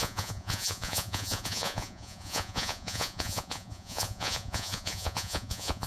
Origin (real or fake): fake